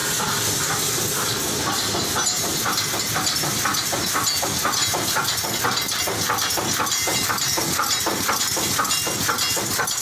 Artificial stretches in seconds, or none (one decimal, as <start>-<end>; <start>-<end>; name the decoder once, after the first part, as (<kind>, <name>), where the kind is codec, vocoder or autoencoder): 4.8-5.6 (vocoder, BigVGAN v2)